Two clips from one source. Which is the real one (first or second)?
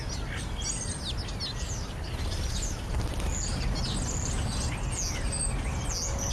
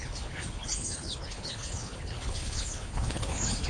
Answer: first